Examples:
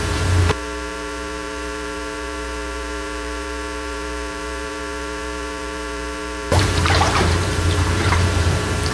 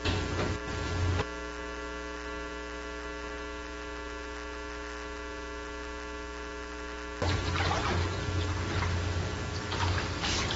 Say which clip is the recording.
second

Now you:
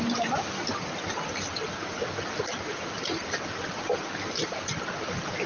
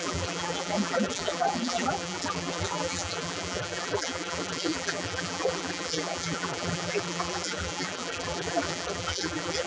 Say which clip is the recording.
first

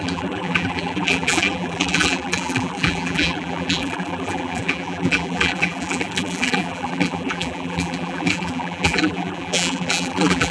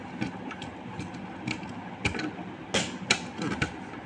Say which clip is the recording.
second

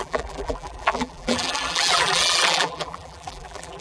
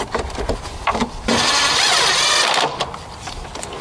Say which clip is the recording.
second